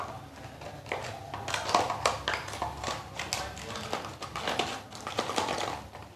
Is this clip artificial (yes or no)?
no